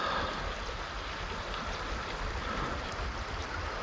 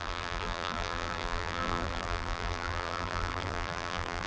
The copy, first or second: second